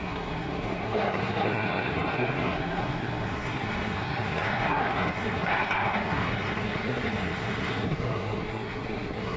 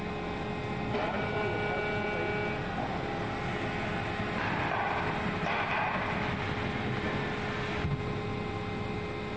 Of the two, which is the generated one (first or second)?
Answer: first